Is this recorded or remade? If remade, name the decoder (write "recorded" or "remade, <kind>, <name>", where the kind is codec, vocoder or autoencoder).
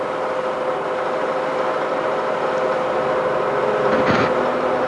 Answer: recorded